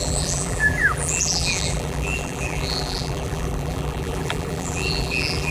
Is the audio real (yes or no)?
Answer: no